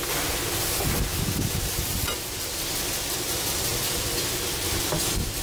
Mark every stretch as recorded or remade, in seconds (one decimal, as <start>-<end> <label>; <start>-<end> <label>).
0.0-1.1 recorded; 1.1-2.9 remade; 2.9-3.7 recorded; 3.7-4.9 remade; 4.9-5.4 recorded